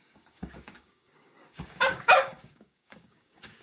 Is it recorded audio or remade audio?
remade